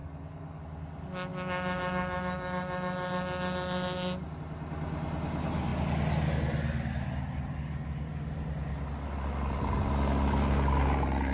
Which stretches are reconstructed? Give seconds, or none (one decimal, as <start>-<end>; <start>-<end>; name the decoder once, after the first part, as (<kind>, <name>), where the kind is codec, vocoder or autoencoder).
0.0-0.6 (codec, DAC)